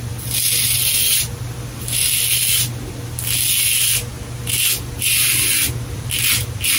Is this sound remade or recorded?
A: recorded